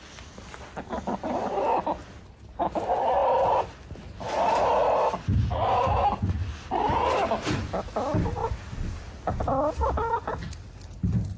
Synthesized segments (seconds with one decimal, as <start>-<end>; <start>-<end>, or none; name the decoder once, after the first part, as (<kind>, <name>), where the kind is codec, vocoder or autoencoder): none